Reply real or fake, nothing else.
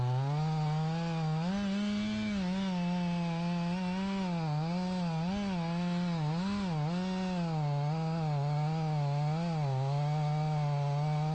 real